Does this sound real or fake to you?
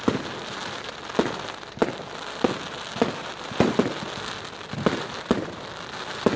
real